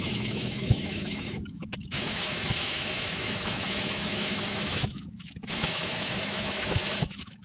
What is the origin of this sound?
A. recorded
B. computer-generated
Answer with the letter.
B